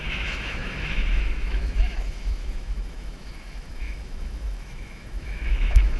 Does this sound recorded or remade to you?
remade